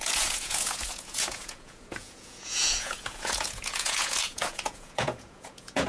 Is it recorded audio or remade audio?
remade